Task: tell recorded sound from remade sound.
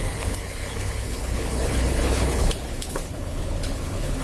remade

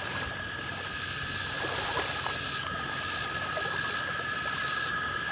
remade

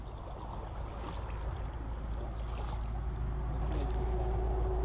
recorded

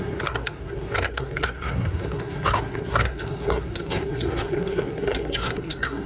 remade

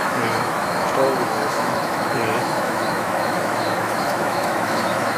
remade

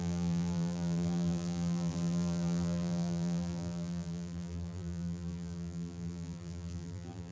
remade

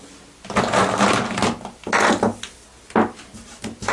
recorded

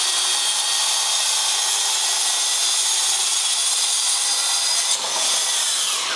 recorded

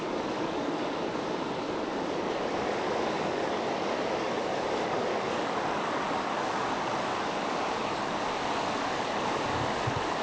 remade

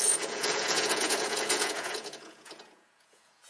remade